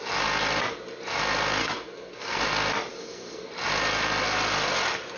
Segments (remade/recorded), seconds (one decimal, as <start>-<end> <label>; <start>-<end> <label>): 0.0-1.6 recorded; 1.6-2.4 remade; 2.4-2.9 recorded; 2.9-3.5 remade; 3.5-5.2 recorded